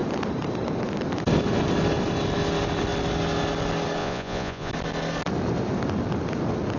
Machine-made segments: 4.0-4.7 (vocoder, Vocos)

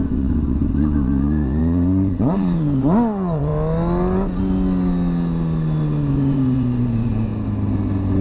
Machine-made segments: 0.0-3.5 (vocoder, Vocos); 6.1-7.3

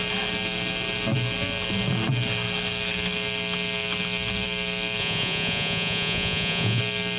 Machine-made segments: 5.0-6.8 (vocoder, Vocos)

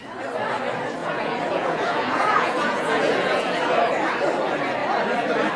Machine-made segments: 1.0-3.6 (vocoder, Vocos)

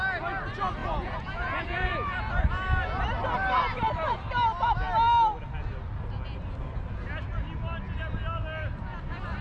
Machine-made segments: 0.8-2.3 (vocoder, Vocos)